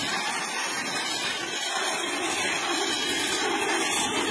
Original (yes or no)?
yes